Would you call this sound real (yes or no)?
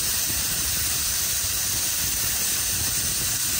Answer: no